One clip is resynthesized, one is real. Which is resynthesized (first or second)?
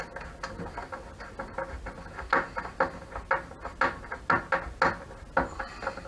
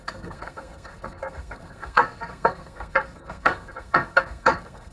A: second